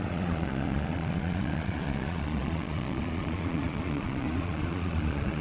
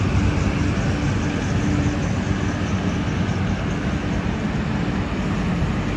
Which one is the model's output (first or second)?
first